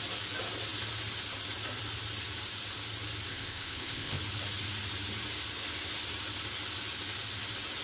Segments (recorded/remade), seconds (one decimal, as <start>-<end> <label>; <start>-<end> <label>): 0.0-3.3 recorded; 3.3-4.2 remade; 4.2-7.8 recorded